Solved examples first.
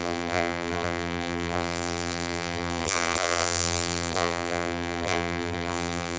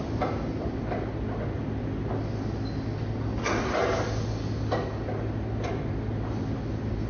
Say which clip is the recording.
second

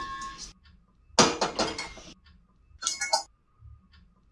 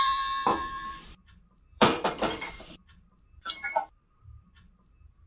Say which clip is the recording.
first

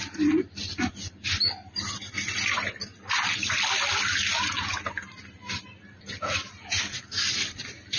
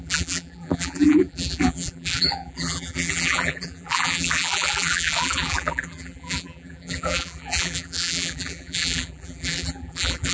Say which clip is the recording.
first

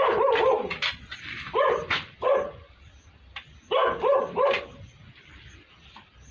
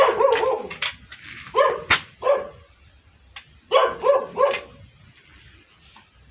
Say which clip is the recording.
second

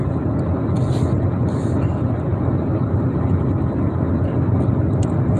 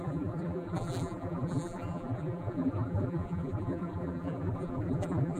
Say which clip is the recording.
first